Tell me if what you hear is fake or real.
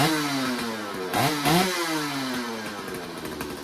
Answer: real